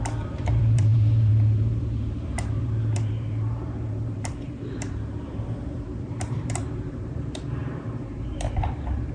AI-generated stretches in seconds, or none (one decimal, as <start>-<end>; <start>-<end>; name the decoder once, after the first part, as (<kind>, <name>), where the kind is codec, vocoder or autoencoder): 0.0-9.1 (vocoder, BigVGAN v2)